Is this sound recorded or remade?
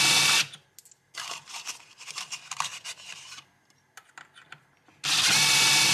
recorded